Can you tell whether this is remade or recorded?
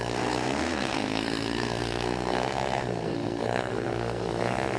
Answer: remade